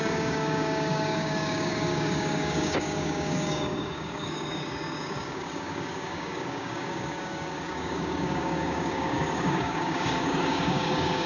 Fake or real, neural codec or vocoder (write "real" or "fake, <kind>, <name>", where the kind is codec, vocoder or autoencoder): fake, codec, DAC